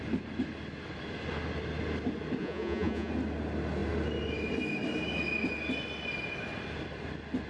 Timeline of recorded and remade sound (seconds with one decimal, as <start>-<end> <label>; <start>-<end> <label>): 0.0-2.4 recorded; 2.4-3.1 remade; 3.1-7.5 recorded